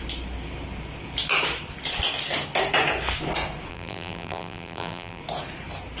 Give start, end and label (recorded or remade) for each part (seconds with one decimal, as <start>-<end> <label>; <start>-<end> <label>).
0.0-3.7 recorded; 3.7-5.2 remade; 5.2-6.0 recorded

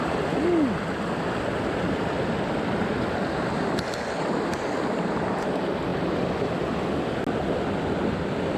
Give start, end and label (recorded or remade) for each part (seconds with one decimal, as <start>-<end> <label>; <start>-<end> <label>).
0.0-8.6 recorded

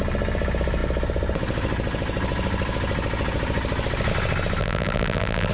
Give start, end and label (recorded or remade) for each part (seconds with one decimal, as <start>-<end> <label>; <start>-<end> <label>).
0.0-4.6 recorded; 4.6-5.5 remade

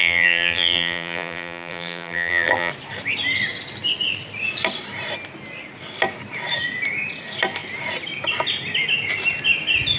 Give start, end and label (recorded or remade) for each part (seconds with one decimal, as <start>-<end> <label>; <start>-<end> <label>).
0.0-2.7 remade; 2.7-10.0 recorded